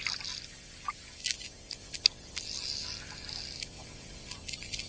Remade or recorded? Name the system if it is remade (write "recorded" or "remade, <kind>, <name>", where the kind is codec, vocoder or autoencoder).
recorded